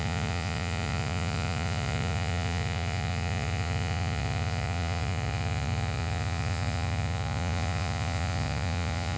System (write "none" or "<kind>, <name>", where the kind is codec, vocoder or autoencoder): vocoder, Vocos